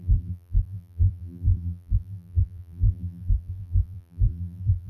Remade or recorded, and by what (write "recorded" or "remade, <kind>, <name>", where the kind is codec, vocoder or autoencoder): remade, vocoder, BigVGAN v2